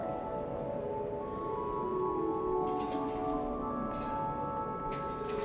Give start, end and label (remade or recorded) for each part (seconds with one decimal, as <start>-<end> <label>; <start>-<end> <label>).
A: 0.0-5.4 recorded